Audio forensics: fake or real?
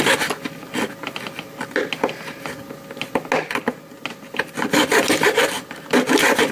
real